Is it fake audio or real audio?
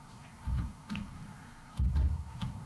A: fake